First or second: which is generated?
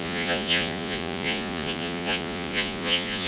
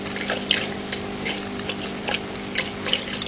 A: first